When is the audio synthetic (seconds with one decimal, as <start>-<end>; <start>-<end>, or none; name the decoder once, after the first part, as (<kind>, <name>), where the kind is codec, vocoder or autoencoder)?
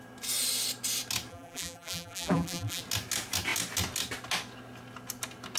1.3-2.8 (vocoder, BigVGAN v2)